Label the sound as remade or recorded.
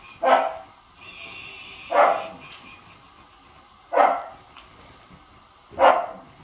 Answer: recorded